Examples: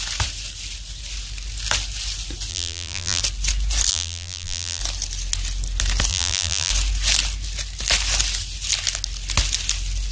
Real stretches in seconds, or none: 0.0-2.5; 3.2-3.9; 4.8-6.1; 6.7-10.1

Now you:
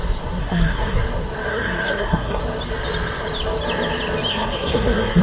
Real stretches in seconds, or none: 0.0-0.4; 1.0-1.5; 2.4-4.3

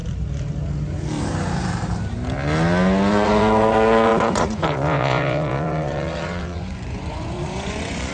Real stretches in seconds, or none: 0.0-3.1

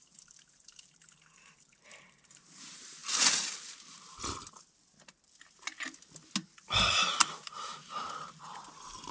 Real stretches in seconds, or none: 3.0-6.9

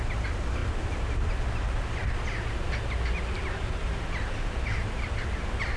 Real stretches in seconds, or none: 0.0-5.8

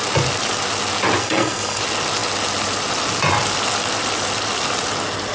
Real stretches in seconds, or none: 0.0-1.2; 1.8-5.3